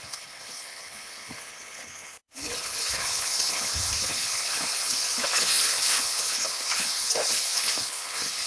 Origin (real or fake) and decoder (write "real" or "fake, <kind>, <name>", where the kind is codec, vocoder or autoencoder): fake, codec, HILCodec